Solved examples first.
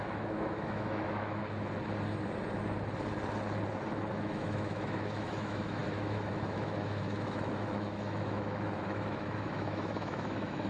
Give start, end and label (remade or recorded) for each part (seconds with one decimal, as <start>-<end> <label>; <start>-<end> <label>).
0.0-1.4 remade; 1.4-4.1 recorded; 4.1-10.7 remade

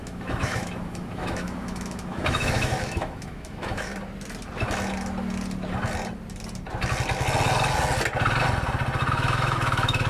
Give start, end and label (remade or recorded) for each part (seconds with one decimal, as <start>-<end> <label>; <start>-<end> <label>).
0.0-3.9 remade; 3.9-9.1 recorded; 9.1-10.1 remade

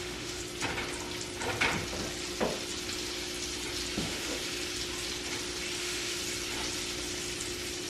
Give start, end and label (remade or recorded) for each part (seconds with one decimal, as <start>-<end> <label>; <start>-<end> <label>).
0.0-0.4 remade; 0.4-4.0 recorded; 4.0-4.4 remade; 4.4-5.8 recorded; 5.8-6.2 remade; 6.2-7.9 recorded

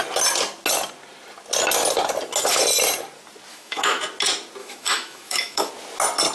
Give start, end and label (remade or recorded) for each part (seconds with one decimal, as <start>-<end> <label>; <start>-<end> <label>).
0.0-3.5 recorded; 3.5-4.0 remade; 4.0-4.6 recorded; 4.6-5.7 remade; 5.7-6.3 recorded